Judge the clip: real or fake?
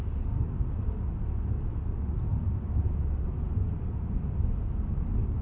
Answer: real